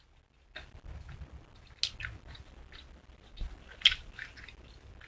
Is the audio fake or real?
real